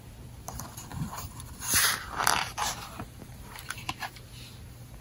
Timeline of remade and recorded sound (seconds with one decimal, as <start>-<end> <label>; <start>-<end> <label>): 0.0-0.9 recorded; 0.9-3.9 remade; 3.9-5.0 recorded